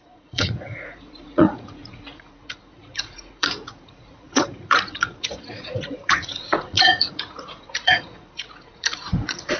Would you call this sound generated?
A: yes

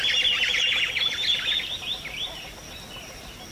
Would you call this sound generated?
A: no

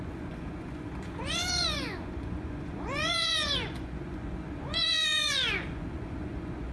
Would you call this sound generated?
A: yes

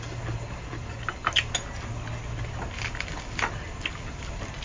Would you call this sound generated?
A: no